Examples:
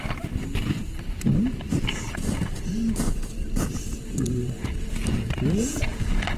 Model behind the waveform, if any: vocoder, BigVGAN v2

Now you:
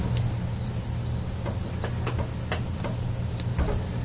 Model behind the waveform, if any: none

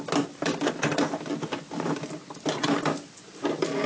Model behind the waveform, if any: none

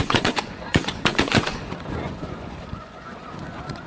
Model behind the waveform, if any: vocoder, Vocos